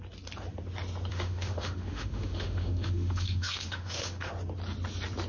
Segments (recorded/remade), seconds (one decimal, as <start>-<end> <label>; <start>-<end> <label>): 0.0-1.1 recorded; 1.1-4.3 remade; 4.3-5.3 recorded